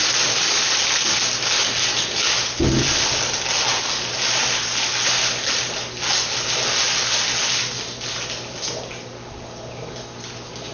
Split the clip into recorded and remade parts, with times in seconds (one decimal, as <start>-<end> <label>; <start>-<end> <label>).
0.0-10.7 recorded